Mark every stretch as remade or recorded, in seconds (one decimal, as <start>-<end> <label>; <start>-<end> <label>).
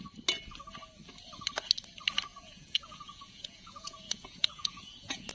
0.0-2.3 recorded; 2.3-5.3 remade